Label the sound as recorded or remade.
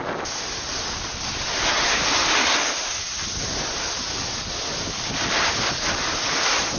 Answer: recorded